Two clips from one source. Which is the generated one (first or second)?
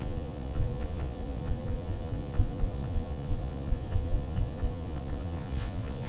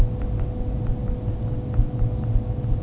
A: first